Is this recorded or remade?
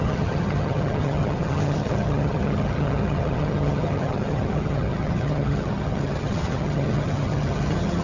remade